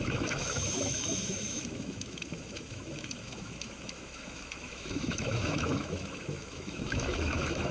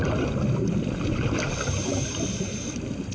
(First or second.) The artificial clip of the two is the first